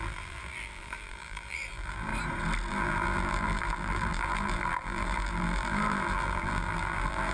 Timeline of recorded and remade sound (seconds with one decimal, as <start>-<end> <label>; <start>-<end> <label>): 0.0-2.1 remade; 2.1-2.7 recorded; 2.7-7.3 remade